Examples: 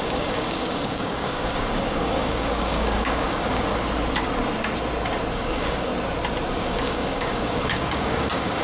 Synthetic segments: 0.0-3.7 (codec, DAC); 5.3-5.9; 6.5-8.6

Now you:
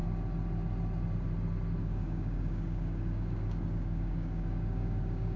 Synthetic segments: 1.8-5.4 (codec, DAC)

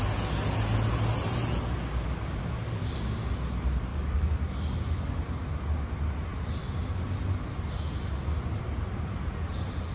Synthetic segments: 3.9-4.4 (codec, DAC)

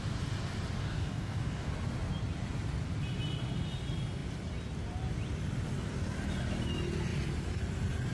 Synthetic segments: 0.8-1.7 (codec, DAC)

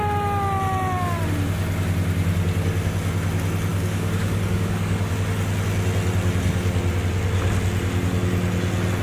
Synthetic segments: 3.7-5.1 (codec, DAC)

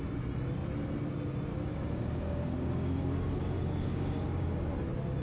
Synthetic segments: 1.5-4.6 (codec, DAC)

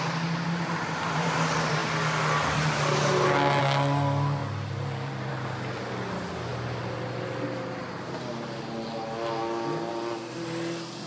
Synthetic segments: none